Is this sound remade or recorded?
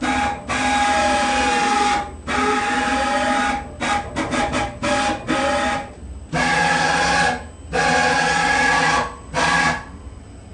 recorded